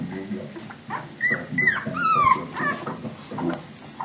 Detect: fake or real real